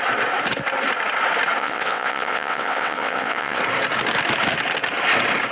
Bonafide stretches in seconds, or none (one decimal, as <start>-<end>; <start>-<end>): 0.0-1.6; 3.6-5.5